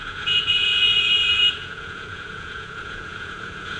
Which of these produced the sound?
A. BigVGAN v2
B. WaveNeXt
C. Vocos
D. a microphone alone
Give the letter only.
C